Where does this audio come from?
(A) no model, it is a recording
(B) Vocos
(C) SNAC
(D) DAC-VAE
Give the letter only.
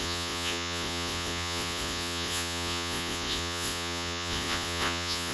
B